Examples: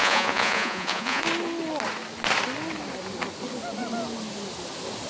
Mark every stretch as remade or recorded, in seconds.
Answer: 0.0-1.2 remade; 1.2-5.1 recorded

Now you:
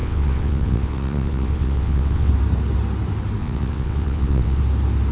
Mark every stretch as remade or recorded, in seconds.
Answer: 0.0-2.3 remade; 2.3-3.4 recorded; 3.4-4.6 remade; 4.6-5.1 recorded

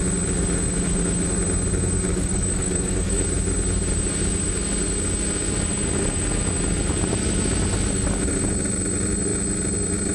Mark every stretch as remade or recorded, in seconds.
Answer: 0.0-2.1 recorded; 2.1-3.2 remade; 3.2-10.1 recorded